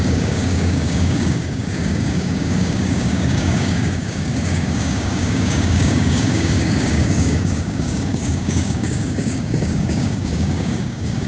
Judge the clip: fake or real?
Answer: fake